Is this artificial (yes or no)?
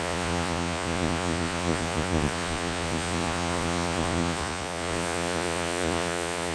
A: yes